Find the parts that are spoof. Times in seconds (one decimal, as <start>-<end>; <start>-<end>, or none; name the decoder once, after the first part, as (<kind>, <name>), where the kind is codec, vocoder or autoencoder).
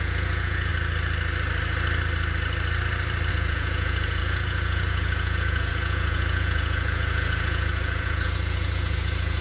0.0-0.7 (vocoder, Vocos); 3.3-9.4